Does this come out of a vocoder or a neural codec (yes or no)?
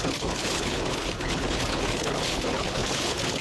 yes